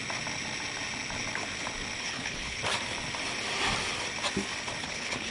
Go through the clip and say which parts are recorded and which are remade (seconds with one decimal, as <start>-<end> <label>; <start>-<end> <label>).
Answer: 0.0-2.0 recorded; 2.0-2.6 remade; 2.6-4.8 recorded; 4.8-5.3 remade